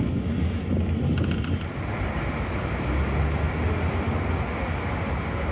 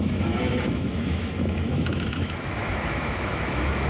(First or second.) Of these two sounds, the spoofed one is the second